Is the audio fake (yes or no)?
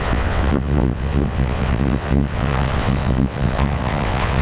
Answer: yes